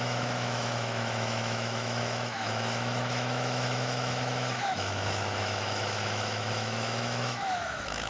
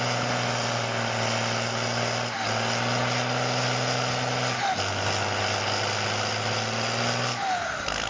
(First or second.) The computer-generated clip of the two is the first